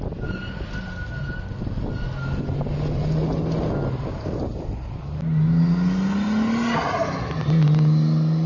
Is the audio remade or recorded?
recorded